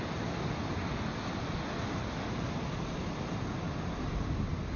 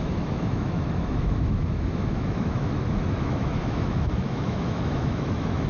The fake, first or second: second